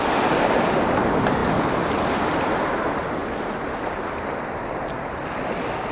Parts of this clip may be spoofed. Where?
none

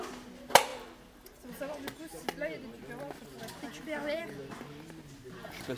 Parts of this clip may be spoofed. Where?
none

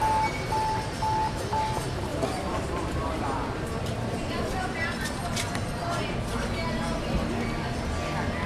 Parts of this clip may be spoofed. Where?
2.1-5.2 (vocoder, BigVGAN v2)

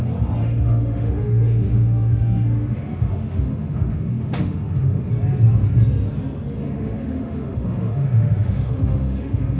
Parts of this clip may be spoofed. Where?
0.4-5.1 (autoencoder, DAC-VAE); 6.6-9.6

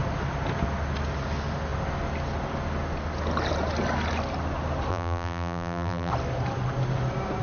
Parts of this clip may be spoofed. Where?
4.9-6.1 (vocoder, BigVGAN v2)